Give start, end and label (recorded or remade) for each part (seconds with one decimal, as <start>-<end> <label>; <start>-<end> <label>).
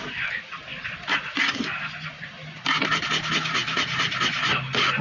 0.0-5.0 recorded